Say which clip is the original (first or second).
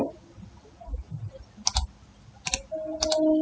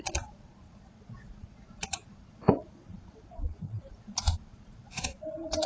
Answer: first